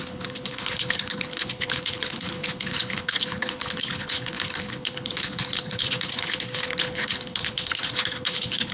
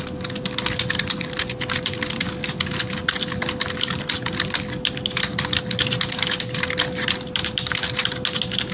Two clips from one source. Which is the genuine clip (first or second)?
second